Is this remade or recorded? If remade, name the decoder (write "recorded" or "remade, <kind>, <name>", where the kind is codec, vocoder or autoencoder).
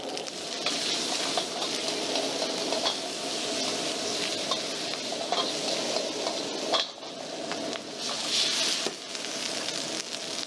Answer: recorded